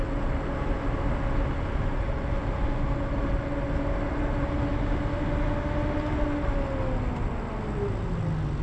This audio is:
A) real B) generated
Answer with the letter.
A